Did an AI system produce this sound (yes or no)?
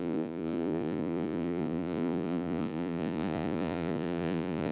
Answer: yes